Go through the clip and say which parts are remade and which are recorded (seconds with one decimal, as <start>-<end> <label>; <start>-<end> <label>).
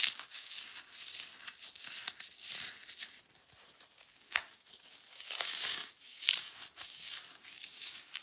0.0-0.7 remade; 0.7-4.1 recorded; 4.1-8.2 remade